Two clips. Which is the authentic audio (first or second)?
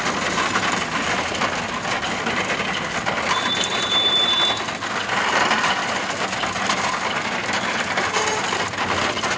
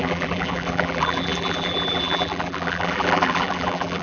first